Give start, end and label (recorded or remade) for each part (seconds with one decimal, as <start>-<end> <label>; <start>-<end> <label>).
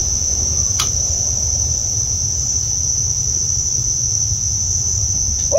0.0-0.7 recorded; 0.7-1.8 remade; 1.8-5.6 recorded